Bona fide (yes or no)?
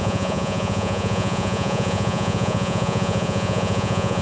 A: no